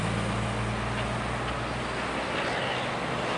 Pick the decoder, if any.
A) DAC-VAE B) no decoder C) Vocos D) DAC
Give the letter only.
B